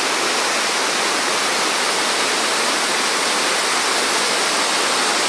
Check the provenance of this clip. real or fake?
real